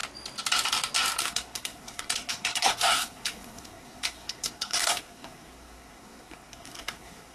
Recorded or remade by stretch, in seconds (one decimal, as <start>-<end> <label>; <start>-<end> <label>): 0.0-1.2 recorded; 1.2-7.3 remade